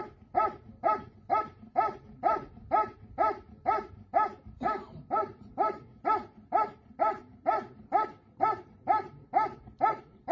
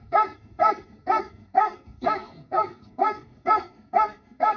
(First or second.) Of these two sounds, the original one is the first